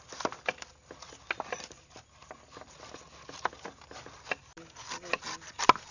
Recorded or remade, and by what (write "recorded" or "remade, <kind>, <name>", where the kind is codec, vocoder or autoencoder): recorded